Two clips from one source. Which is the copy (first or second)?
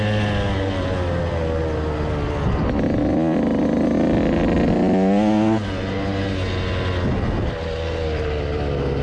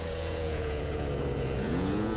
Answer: second